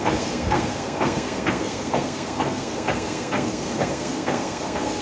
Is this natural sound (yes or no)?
no